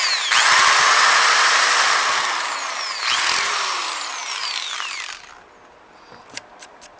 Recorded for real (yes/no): yes